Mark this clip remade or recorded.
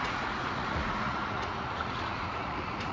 remade